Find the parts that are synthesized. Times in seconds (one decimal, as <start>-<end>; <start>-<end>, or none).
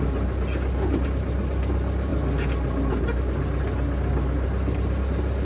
none